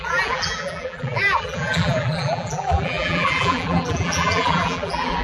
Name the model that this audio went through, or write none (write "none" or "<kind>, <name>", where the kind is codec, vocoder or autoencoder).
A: vocoder, BigVGAN v2